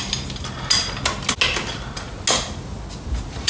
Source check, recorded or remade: recorded